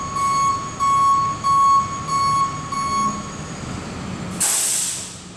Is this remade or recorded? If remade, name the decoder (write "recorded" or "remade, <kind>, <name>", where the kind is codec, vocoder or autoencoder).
recorded